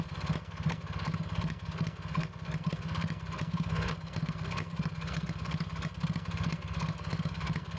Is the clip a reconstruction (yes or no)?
yes